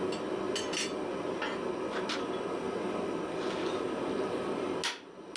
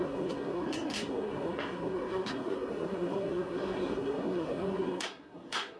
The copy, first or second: second